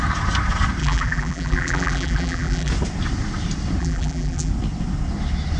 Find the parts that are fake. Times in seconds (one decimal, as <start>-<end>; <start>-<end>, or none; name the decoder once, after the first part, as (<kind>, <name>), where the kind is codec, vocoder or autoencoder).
0.8-2.7 (vocoder, BigVGAN v2); 3.8-4.5